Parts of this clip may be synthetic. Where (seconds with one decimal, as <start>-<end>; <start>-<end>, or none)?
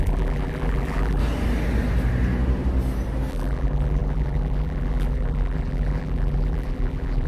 0.0-1.2; 3.3-7.3